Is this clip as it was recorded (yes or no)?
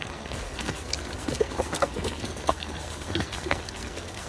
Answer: no